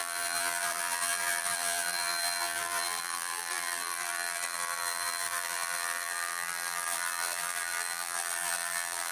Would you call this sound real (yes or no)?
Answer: no